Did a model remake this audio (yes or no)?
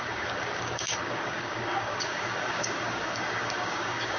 yes